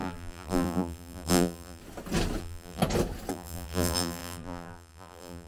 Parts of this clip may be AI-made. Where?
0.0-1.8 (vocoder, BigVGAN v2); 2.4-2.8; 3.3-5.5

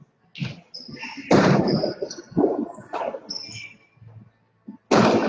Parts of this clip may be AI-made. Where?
0.4-2.6 (vocoder, BigVGAN v2)

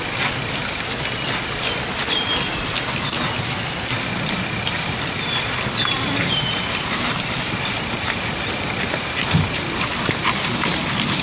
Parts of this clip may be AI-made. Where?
5.8-9.6 (vocoder, BigVGAN v2)

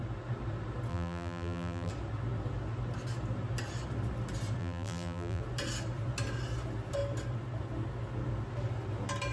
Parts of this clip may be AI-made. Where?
0.9-1.9 (vocoder, BigVGAN v2); 4.6-5.4

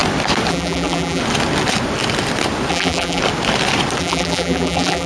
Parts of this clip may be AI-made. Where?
0.5-1.2 (vocoder, BigVGAN v2); 2.7-3.2; 4.0-5.1

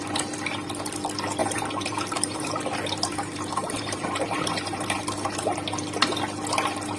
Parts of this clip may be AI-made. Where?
1.4-5.0 (vocoder, BigVGAN v2)